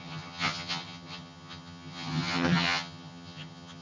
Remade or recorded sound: remade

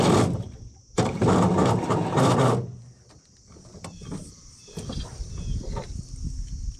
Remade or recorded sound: recorded